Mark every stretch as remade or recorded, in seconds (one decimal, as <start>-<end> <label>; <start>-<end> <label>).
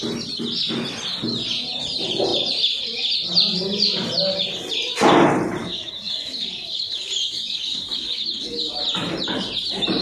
0.0-5.6 recorded; 5.6-8.7 remade; 8.7-10.0 recorded